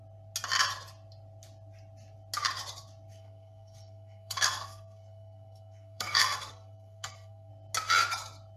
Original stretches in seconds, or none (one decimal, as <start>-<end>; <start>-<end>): 0.0-3.1; 7.5-8.6